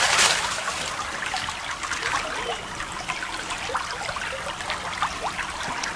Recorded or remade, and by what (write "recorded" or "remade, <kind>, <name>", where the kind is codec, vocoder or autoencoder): recorded